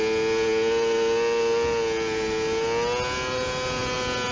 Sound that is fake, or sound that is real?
real